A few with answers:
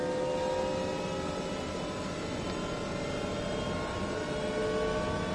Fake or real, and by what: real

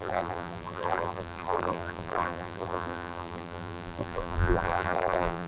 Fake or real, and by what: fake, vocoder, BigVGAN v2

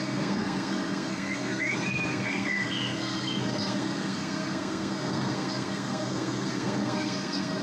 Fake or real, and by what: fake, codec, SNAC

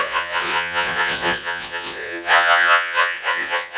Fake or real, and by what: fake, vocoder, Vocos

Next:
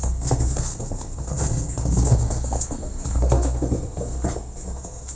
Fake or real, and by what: fake, codec, SNAC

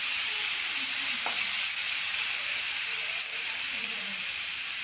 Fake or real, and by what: fake, vocoder, BigVGAN v2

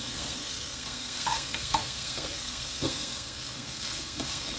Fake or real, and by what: fake, codec, SNAC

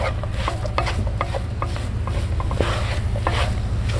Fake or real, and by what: real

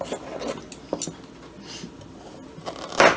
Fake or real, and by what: real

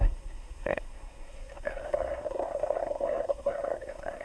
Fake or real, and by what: fake, codec, SNAC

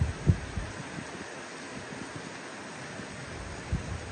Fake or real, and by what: real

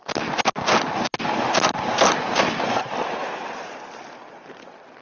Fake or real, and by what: real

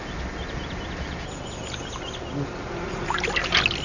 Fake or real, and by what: real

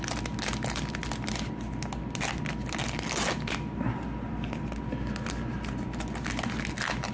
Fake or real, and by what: real